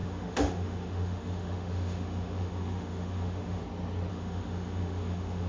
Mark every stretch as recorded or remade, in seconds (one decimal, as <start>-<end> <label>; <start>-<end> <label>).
0.0-3.6 remade; 3.6-4.1 recorded; 4.1-5.5 remade